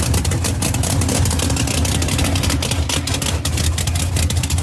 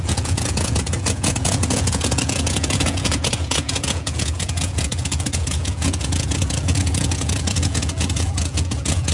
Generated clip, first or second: second